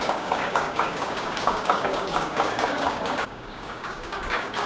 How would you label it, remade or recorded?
remade